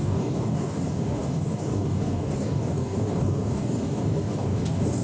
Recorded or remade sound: remade